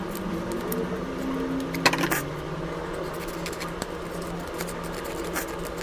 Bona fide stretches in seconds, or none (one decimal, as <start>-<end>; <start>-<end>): 0.0-5.8